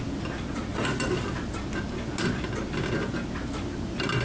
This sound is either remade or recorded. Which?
recorded